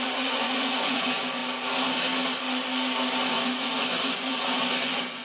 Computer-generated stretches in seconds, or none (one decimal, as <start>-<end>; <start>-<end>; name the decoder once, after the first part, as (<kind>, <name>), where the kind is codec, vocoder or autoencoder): 0.0-1.4 (vocoder, Vocos); 3.3-5.2